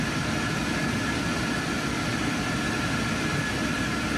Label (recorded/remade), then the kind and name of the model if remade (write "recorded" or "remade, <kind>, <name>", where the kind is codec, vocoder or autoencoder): recorded